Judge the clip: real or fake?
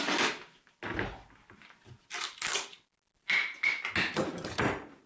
real